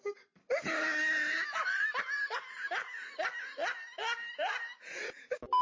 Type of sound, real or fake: real